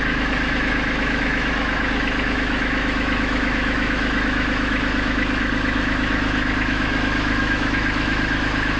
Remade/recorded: remade